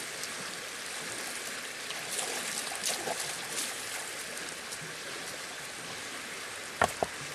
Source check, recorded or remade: recorded